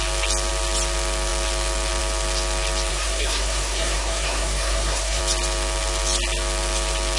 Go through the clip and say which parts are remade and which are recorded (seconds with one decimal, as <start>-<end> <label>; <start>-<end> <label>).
0.0-2.9 recorded; 2.9-5.2 remade; 5.2-7.2 recorded